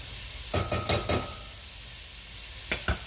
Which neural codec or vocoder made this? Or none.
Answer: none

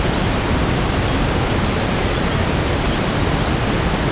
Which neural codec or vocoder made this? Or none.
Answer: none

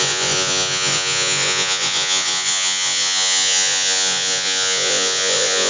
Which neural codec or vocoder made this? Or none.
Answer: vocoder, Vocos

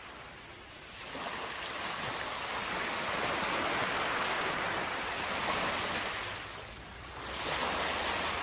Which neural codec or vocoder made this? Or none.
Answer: none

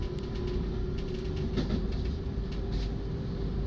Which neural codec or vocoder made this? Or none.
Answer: none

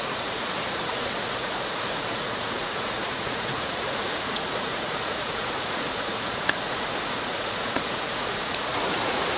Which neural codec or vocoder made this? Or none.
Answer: vocoder, Vocos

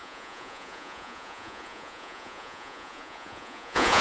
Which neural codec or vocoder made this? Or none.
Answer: vocoder, Vocos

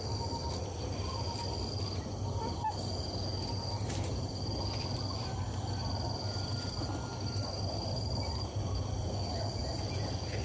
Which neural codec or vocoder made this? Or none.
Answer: none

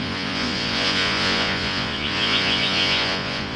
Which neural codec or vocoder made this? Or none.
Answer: vocoder, Vocos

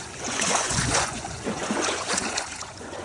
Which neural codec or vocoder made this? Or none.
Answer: vocoder, Vocos